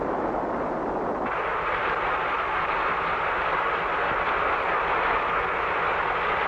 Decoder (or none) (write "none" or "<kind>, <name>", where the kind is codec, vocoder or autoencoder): none